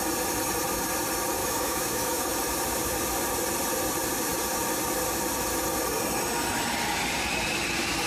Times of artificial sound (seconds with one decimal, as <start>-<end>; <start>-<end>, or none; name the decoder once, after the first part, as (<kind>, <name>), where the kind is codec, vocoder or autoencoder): 1.4-2.3 (autoencoder, DAC-VAE)